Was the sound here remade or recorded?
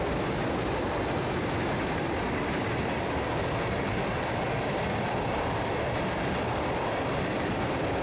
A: recorded